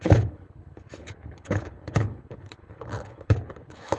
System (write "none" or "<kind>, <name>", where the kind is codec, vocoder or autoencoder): codec, HILCodec